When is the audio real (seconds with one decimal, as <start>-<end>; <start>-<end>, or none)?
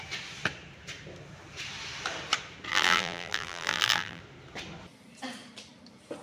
0.0-2.7; 4.2-6.2